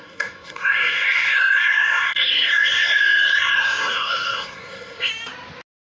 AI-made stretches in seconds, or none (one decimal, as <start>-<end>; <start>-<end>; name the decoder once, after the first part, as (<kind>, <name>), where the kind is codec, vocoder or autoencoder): 0.0-5.1 (codec, SNAC)